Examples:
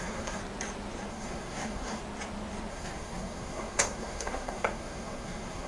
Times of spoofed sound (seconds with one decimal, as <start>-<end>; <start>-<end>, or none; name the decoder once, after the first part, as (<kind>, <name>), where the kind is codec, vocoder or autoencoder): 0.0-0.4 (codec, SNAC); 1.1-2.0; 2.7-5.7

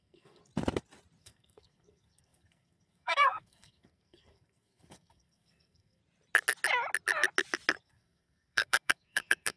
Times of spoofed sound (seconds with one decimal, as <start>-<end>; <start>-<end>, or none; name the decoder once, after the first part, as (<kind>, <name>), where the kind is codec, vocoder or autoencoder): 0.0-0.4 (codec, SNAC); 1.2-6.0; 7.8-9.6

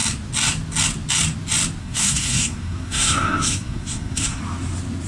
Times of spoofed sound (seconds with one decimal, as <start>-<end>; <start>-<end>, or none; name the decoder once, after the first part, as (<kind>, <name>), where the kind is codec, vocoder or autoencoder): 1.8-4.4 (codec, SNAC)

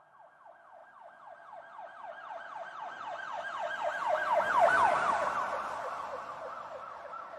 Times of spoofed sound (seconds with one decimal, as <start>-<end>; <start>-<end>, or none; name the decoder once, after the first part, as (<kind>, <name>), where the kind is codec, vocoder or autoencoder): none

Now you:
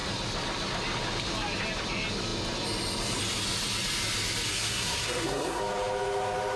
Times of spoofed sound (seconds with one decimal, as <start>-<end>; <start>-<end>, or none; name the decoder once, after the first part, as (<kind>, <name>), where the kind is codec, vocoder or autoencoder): 4.5-5.6 (codec, SNAC)